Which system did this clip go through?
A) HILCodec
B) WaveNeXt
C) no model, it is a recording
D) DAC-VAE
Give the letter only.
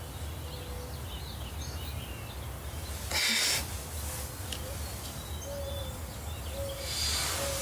C